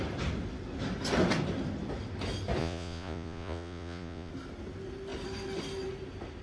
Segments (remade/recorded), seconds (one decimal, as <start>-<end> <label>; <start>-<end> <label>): 0.0-2.6 recorded; 2.6-4.3 remade; 4.3-6.4 recorded